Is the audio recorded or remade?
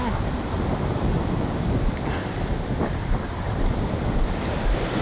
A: recorded